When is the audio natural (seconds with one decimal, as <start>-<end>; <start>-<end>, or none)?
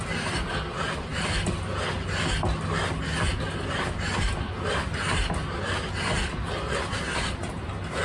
0.0-8.0